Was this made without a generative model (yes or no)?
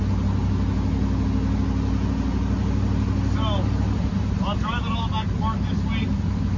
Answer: yes